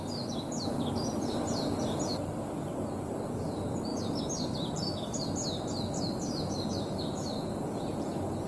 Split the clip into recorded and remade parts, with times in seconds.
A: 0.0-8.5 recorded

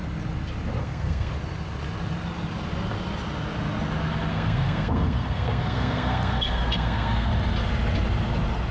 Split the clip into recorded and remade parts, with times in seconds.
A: 0.0-0.8 recorded; 0.8-1.3 remade; 1.3-4.3 recorded; 4.3-7.3 remade; 7.3-8.7 recorded

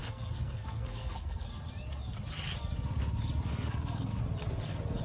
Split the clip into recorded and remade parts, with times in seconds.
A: 0.0-1.5 remade; 1.5-3.5 recorded; 3.5-4.2 remade; 4.2-5.0 recorded